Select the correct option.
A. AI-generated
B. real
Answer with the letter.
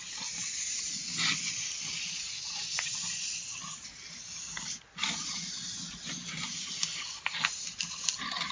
B